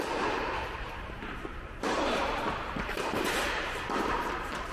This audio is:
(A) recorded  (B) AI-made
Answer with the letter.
B